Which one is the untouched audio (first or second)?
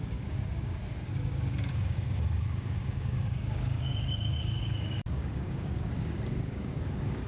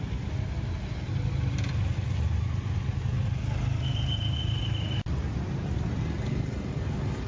second